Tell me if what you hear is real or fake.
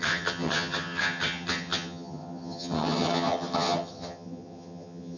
fake